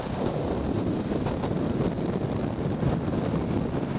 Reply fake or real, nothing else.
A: real